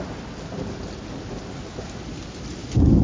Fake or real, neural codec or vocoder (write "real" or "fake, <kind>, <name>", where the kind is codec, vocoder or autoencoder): real